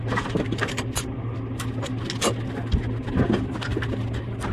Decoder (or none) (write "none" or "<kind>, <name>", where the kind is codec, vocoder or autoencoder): none